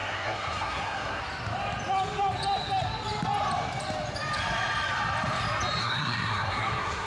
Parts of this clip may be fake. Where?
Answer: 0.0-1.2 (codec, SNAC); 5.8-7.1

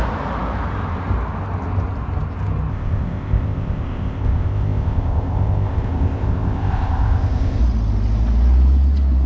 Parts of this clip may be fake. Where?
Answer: 2.7-7.6 (codec, ZipCodec)

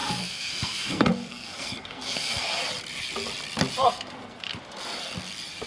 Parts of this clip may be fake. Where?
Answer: 0.0-2.6 (codec, SNAC); 3.8-4.5

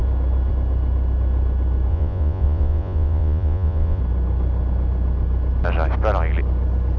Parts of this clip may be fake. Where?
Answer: 1.9-4.0 (vocoder, Vocos)

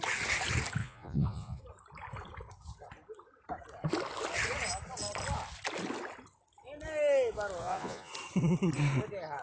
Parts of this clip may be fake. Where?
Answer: 0.8-1.6 (vocoder, Vocos); 7.6-8.1

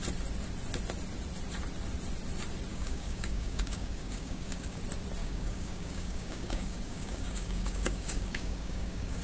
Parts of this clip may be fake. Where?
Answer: 2.7-4.8 (codec, DAC); 5.2-9.2

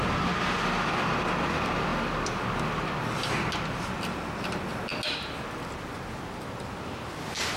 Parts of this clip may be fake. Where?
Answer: none